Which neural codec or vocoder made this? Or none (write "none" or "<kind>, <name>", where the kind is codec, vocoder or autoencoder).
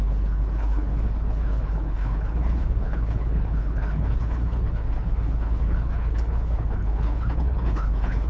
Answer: codec, HILCodec